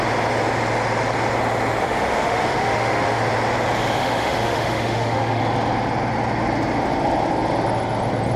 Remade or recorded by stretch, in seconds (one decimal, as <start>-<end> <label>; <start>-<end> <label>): 0.0-1.8 recorded; 1.8-3.2 remade; 3.2-4.0 recorded; 4.0-5.4 remade; 5.4-8.4 recorded